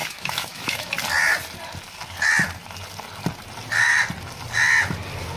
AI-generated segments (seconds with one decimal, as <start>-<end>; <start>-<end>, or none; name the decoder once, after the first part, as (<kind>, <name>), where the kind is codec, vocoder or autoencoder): 0.0-0.9 (autoencoder, DAC-VAE)